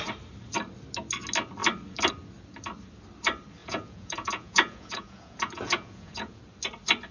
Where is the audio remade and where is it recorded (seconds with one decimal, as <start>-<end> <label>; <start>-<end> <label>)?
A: 0.0-3.6 recorded; 3.6-6.4 remade; 6.4-7.1 recorded